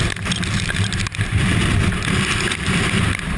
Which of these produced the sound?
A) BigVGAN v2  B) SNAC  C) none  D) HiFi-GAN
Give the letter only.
A